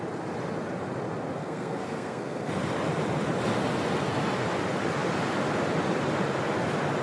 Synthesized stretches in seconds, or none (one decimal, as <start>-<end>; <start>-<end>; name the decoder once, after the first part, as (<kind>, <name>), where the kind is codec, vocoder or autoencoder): 1.4-2.5 (codec, SNAC)